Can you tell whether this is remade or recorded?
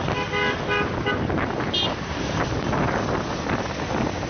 recorded